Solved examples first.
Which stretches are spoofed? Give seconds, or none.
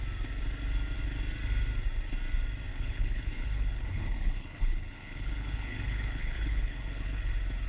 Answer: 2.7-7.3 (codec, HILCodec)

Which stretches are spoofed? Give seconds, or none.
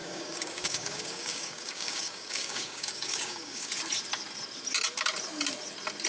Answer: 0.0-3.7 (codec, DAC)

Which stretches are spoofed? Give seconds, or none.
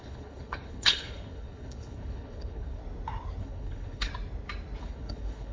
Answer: 0.0-2.8 (codec, HILCodec); 3.4-4.1; 4.8-5.5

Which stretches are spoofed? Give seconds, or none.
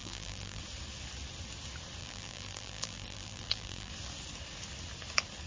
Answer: 0.0-0.6 (vocoder, BigVGAN v2); 2.0-3.9